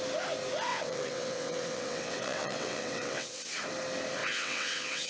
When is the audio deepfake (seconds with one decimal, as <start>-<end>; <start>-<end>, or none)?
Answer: 0.7-3.5; 4.2-5.1